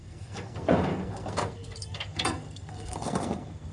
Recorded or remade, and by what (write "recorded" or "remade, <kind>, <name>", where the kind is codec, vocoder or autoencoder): remade, codec, SNAC